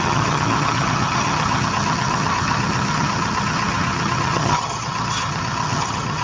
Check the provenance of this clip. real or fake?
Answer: fake